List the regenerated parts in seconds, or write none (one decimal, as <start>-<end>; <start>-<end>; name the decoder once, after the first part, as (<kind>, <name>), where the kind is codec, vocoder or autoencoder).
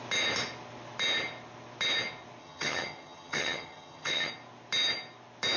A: 2.4-4.3 (vocoder, HiFi-GAN)